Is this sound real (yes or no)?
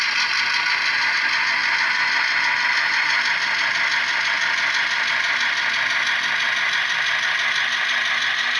yes